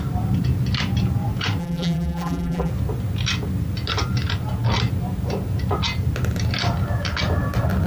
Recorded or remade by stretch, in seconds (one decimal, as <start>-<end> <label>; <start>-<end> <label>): 0.0-1.6 recorded; 1.6-2.7 remade; 2.7-7.9 recorded